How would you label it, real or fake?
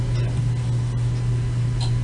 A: real